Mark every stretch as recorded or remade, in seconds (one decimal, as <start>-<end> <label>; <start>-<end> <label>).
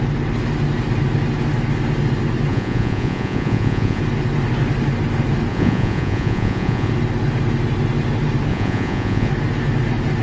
0.0-2.5 recorded; 2.5-4.0 remade; 4.0-5.5 recorded; 5.5-6.9 remade; 6.9-8.5 recorded; 8.5-9.3 remade; 9.3-10.2 recorded